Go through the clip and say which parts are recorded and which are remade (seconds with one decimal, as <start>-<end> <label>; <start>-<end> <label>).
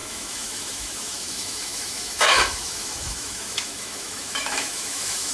0.0-5.3 remade